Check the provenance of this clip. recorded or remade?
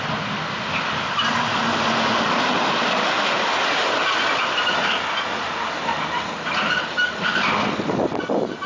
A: recorded